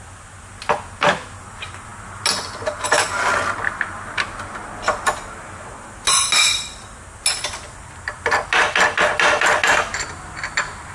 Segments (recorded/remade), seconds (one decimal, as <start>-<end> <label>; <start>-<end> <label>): 0.0-10.9 recorded